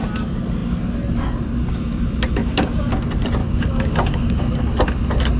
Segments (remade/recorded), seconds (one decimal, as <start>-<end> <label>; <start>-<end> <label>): 0.0-2.4 recorded; 2.4-2.9 remade; 2.9-3.4 recorded; 3.4-4.4 remade; 4.4-5.4 recorded